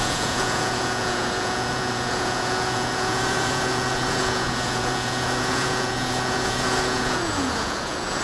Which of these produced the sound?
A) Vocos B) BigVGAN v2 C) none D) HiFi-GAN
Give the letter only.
A